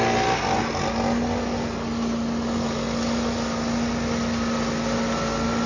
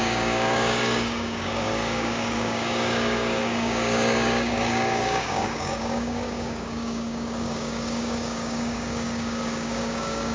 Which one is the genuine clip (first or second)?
first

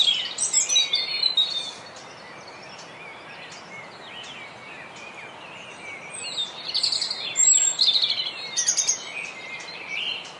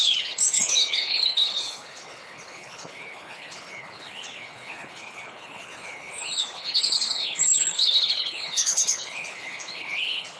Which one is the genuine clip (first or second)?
first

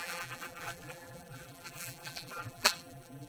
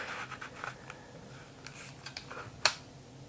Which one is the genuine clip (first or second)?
second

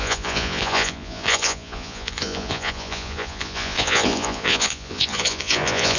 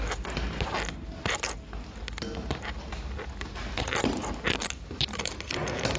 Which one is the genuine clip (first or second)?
second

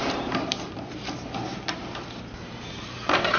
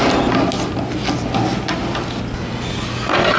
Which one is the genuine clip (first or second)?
second